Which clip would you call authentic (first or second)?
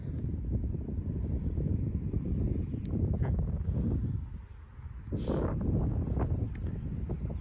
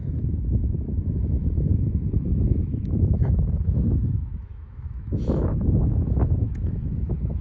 first